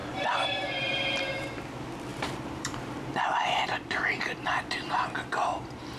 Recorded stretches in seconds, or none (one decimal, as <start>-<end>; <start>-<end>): 1.6-2.1

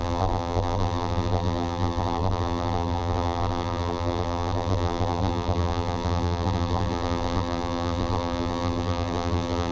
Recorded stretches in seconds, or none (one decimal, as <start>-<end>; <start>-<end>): none

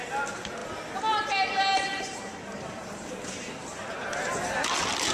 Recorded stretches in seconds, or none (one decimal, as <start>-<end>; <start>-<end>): 0.0-1.9; 4.1-5.1

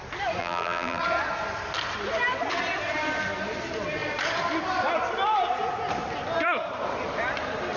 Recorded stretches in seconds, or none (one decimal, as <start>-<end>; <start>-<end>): 0.0-0.4; 1.0-7.8

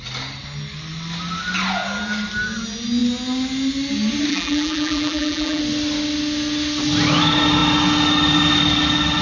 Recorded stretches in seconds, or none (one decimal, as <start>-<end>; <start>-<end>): 0.0-4.3; 5.6-9.2

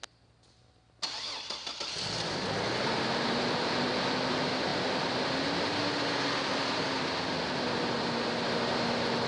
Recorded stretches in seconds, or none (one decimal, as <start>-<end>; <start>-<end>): 0.0-9.3